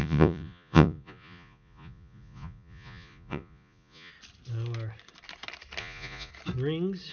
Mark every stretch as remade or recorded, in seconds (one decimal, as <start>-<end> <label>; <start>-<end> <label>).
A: 0.0-4.1 remade; 4.1-5.8 recorded; 5.8-6.3 remade; 6.3-7.1 recorded